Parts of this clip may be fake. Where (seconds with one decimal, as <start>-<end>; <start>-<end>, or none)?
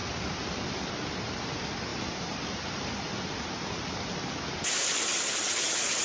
0.0-0.9; 1.9-5.5